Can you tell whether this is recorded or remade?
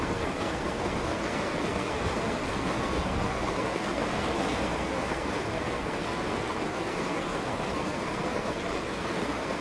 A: remade